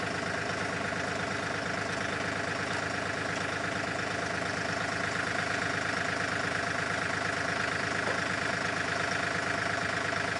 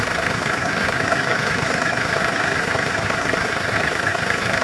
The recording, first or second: first